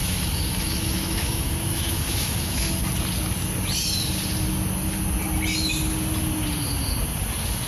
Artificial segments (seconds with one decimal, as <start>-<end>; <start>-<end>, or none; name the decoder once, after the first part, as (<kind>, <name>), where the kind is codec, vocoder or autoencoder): 0.0-2.8 (autoencoder, DAC-VAE)

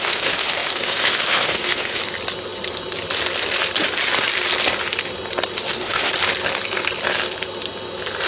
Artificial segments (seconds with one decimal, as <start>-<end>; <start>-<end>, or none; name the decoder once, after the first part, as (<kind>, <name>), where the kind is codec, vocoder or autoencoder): 0.0-2.0 (autoencoder, DAC-VAE); 5.6-6.1

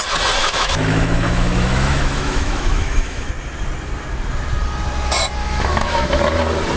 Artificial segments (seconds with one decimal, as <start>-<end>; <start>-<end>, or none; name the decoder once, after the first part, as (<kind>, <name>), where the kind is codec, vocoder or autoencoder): 0.4-3.3 (autoencoder, DAC-VAE); 5.4-6.2

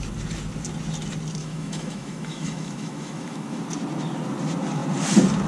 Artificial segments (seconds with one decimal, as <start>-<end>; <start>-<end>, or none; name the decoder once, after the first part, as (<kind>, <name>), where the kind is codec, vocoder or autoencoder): 1.4-3.6 (autoencoder, DAC-VAE)

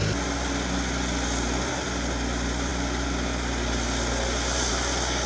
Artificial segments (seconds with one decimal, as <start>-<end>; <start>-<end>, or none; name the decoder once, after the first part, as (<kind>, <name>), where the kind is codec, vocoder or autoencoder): none

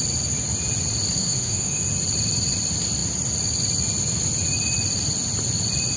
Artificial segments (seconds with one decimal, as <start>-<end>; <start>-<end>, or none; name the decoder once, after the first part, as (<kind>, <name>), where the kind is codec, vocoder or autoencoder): 1.2-1.8 (autoencoder, DAC-VAE)